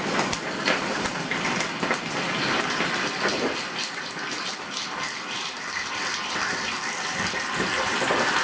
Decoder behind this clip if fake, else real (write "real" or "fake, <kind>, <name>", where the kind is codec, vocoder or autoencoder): fake, vocoder, BigVGAN v2